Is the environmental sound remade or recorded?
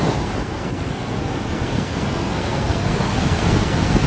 remade